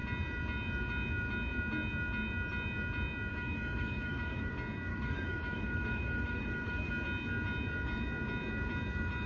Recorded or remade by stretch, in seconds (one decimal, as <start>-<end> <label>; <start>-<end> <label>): 0.0-3.3 recorded; 3.3-4.5 remade; 4.5-4.9 recorded; 4.9-6.9 remade; 6.9-9.3 recorded